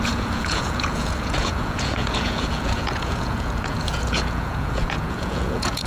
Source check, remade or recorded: remade